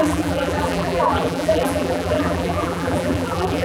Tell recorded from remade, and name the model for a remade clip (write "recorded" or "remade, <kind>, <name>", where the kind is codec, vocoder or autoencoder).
remade, vocoder, BigVGAN v2